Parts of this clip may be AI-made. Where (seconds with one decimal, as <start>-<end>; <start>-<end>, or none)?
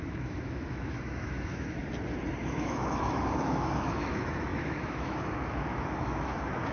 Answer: 0.0-1.8; 2.4-6.7